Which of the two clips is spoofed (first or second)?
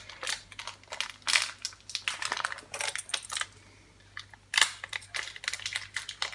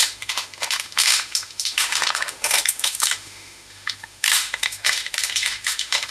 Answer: second